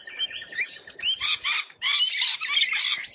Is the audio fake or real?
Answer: real